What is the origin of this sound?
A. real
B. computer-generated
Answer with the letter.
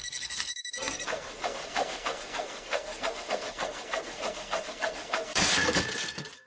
B